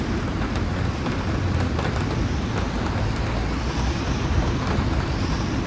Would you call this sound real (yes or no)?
yes